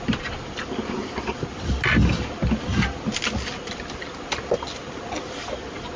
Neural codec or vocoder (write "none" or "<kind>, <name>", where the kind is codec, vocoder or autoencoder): none